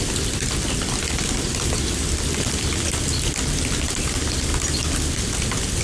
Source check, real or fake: real